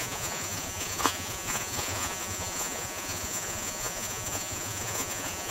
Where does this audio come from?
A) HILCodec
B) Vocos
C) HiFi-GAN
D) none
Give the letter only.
B